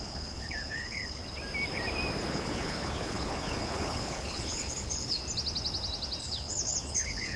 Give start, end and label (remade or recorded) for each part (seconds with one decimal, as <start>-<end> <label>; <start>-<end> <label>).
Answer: 0.0-1.2 remade; 1.2-2.3 recorded; 2.3-5.2 remade; 5.2-6.2 recorded; 6.2-7.4 remade